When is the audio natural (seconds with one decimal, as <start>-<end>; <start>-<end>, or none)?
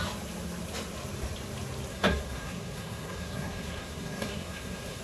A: 0.0-1.9